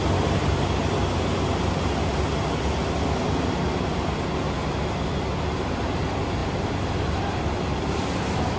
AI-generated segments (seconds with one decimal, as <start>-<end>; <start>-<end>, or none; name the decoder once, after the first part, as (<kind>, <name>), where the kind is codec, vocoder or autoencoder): none